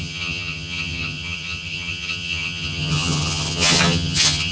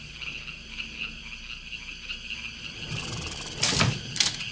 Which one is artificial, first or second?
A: first